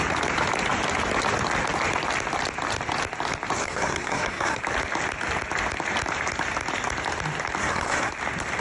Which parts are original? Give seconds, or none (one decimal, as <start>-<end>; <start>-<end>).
0.0-3.6; 4.6-7.6; 8.1-8.6